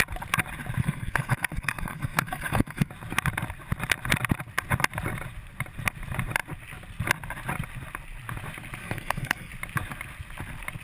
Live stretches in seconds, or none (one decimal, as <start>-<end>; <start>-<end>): 0.0-0.8; 2.9-8.8; 9.5-10.8

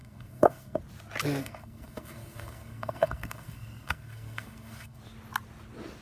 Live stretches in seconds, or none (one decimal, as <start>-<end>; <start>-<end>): 0.8-1.4; 5.0-6.0

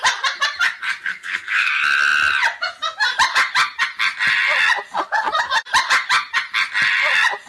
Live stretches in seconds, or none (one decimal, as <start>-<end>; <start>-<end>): 0.0-1.1; 1.7-7.5

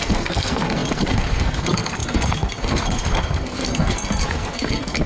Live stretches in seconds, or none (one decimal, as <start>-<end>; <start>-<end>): none

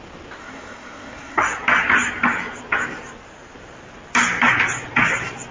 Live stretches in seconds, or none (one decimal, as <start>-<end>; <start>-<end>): 0.0-0.4; 1.4-5.5

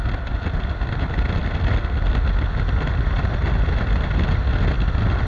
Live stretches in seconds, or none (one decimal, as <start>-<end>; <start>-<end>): 0.0-5.3

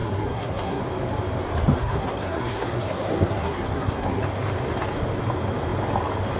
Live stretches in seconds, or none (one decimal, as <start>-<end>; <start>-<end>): 0.8-1.8; 4.2-6.4